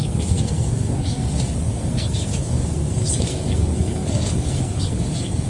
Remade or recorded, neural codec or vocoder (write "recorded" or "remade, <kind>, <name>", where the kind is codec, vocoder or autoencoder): remade, codec, SNAC